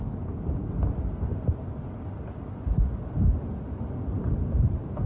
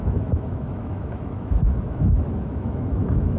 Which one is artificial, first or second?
second